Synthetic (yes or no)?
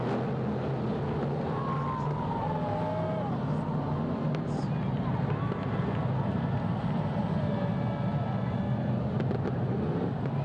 no